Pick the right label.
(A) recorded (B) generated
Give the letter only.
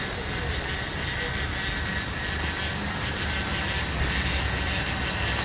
A